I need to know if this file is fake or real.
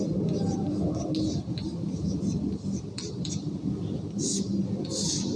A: real